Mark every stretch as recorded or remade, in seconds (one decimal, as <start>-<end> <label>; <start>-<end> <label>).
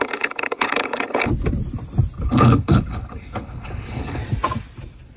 0.0-1.3 remade; 1.3-2.2 recorded; 2.2-4.2 remade; 4.2-5.2 recorded